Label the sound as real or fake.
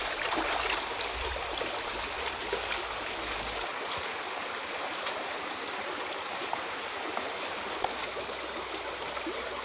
real